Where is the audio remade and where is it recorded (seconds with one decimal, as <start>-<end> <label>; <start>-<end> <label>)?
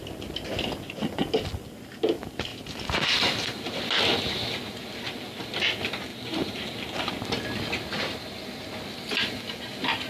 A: 0.0-2.5 recorded; 2.5-3.8 remade; 3.8-6.1 recorded; 6.1-7.1 remade; 7.1-10.1 recorded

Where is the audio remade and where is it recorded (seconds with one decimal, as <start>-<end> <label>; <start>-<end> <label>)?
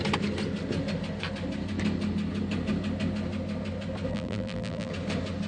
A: 0.0-4.1 recorded; 4.1-4.9 remade; 4.9-5.5 recorded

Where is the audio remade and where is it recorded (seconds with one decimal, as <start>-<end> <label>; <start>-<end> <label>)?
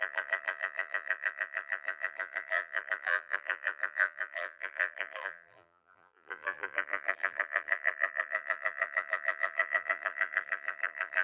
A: 0.0-11.2 remade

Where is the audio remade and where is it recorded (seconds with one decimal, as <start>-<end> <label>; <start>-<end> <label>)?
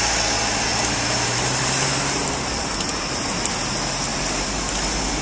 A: 0.0-0.7 recorded; 0.7-3.5 remade; 3.5-4.1 recorded; 4.1-4.7 remade; 4.7-5.2 recorded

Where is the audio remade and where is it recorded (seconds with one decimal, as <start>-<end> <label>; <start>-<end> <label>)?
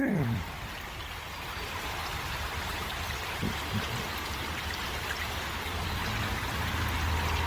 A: 0.0-6.0 remade; 6.0-7.5 recorded